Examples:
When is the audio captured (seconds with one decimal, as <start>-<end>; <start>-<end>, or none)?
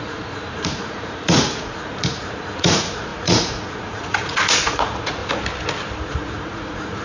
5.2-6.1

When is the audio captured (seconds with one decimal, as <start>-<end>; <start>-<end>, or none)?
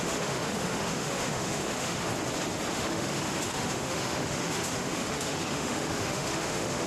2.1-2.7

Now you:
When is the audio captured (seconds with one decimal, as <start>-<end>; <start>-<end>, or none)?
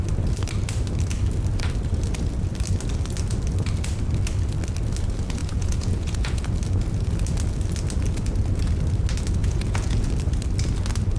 0.0-5.4; 6.5-9.4; 10.1-11.2